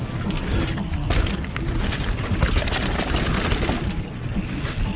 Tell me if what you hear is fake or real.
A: real